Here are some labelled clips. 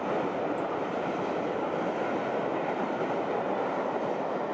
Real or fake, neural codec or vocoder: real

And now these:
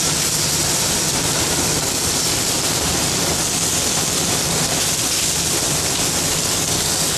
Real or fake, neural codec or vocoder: real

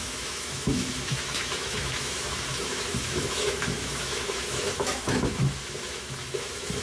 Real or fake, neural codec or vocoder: fake, autoencoder, DAC-VAE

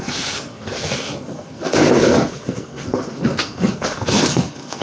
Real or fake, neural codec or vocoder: fake, codec, SNAC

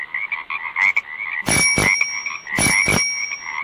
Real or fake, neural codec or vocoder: real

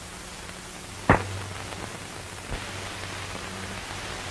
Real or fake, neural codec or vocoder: real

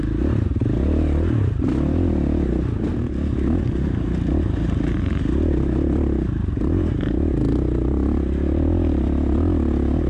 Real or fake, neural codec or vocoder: real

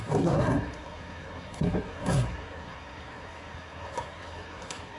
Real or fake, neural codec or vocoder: fake, codec, SNAC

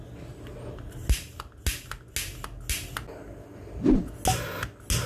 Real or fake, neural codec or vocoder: real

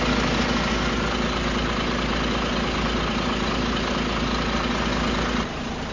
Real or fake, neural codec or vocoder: real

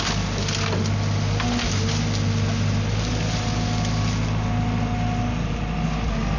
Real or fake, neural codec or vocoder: real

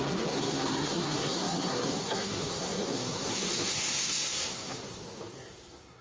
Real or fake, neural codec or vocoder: fake, codec, SNAC